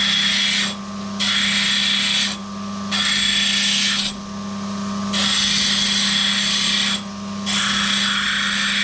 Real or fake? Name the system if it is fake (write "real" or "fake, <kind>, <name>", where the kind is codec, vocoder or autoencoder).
real